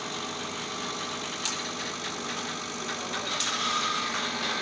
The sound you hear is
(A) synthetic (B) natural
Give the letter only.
B